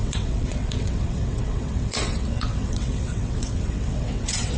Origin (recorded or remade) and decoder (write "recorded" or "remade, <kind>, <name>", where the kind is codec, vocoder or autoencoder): remade, vocoder, WaveNeXt